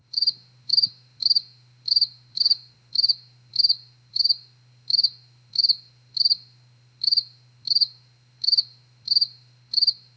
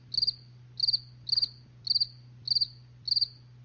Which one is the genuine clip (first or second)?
second